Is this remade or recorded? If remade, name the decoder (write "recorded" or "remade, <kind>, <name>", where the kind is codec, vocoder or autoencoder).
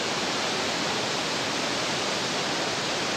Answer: recorded